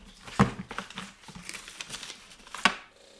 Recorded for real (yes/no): yes